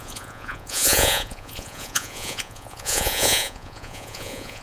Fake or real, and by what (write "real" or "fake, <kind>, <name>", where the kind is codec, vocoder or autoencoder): fake, vocoder, Vocos